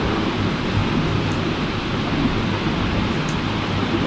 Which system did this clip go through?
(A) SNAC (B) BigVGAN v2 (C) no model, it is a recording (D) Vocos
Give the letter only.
C